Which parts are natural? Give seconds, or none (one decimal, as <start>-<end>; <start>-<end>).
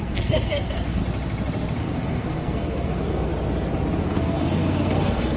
1.0-1.8; 3.3-4.0